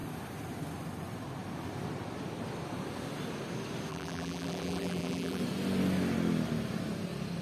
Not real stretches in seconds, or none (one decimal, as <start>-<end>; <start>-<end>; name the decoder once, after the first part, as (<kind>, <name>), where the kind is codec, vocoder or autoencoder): 3.9-5.4 (vocoder, BigVGAN v2)